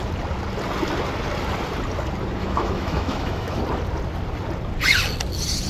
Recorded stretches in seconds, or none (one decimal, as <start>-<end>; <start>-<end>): 0.0-2.4; 3.6-5.7